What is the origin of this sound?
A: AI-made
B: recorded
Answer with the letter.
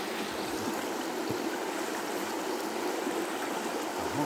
B